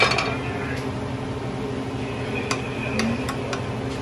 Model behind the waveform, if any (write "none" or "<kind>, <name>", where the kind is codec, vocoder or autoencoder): none